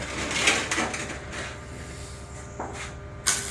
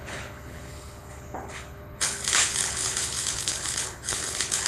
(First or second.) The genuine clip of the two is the first